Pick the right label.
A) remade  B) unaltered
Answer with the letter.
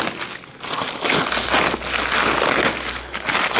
B